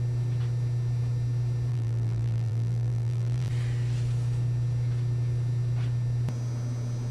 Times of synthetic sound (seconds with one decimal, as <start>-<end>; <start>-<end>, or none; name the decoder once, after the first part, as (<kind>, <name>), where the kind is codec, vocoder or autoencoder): 1.7-3.5 (vocoder, BigVGAN v2)